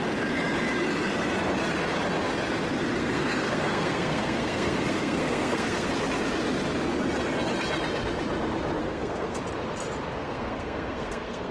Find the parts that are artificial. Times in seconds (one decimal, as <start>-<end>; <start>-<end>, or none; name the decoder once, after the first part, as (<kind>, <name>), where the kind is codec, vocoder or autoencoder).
3.0-5.9 (codec, SNAC); 8.8-9.4; 10.2-11.5